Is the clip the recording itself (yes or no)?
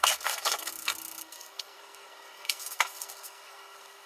no